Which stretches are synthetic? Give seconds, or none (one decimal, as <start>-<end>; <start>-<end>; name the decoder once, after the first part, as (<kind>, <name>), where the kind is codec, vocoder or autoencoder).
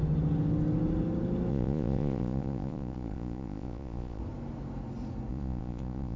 1.5-4.2 (vocoder, Vocos); 5.3-6.2